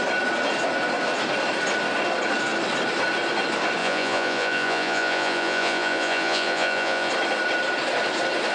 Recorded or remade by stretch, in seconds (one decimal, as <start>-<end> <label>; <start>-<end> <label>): 0.0-3.8 recorded; 3.8-7.1 remade; 7.1-8.5 recorded